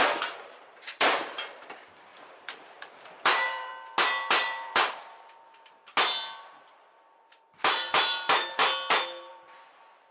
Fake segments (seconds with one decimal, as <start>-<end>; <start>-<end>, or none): 0.0-3.7; 4.4-5.8; 6.4-8.6; 9.3-10.1